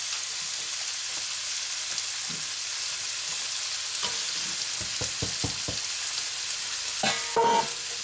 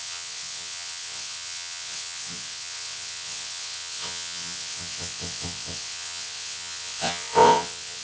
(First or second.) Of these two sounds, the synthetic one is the second